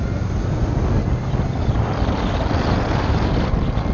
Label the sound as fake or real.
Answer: real